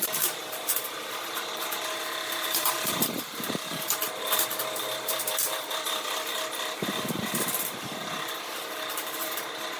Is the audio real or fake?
fake